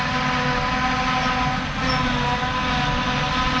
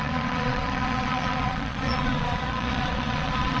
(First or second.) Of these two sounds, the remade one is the second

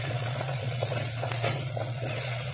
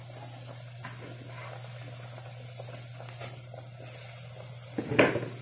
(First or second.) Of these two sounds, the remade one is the first